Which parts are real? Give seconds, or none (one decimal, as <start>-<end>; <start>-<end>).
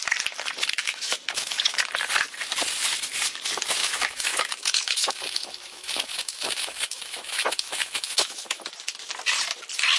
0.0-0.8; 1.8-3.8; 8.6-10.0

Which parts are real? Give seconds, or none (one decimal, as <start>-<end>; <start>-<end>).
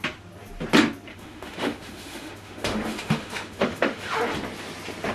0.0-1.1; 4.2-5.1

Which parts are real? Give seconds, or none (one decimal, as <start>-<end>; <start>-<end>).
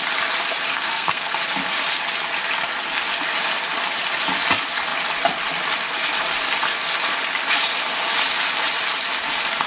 0.0-0.7; 1.3-9.7